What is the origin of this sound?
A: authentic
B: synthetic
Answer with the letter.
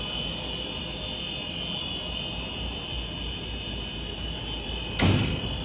A